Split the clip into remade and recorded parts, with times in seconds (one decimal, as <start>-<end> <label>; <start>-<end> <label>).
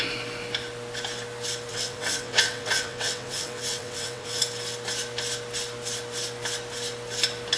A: 0.0-1.7 recorded; 1.7-4.4 remade; 4.4-7.6 recorded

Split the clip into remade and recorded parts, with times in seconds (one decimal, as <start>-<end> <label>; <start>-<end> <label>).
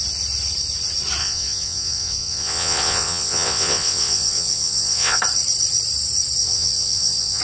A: 0.0-1.2 recorded; 1.2-5.2 remade; 5.2-6.4 recorded; 6.4-7.4 remade